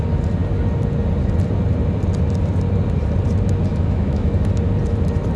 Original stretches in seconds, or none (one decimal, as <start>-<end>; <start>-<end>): 0.0-3.7; 4.3-5.4